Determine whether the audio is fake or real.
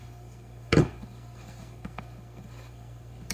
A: fake